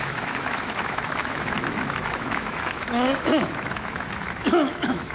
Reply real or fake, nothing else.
fake